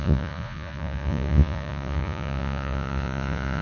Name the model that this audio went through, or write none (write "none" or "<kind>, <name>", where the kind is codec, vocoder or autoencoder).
vocoder, Vocos